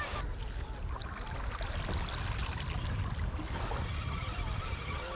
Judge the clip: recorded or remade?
recorded